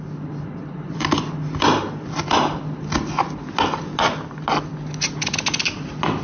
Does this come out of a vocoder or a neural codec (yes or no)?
no